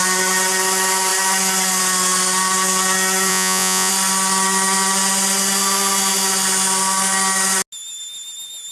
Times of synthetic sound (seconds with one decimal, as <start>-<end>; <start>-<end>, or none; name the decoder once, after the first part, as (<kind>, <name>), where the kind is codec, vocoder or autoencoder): 3.3-3.9 (vocoder, Vocos)